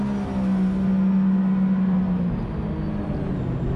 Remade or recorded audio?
recorded